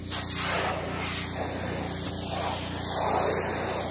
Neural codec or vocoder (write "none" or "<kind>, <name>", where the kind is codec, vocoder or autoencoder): none